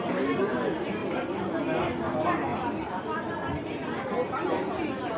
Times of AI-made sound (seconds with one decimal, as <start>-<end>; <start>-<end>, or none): none